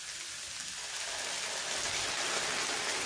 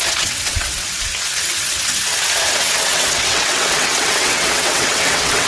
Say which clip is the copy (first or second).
second